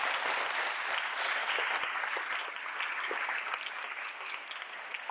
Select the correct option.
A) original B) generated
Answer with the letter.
A